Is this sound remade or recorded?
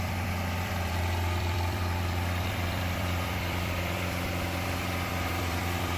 remade